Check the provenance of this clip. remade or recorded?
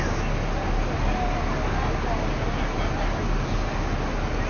recorded